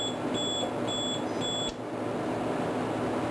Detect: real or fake real